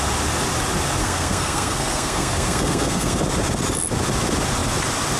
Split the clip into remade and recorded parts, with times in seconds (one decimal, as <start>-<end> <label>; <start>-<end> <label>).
0.0-1.0 recorded; 1.0-3.2 remade; 3.2-5.2 recorded